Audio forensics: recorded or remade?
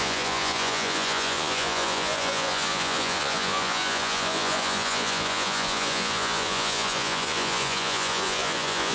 remade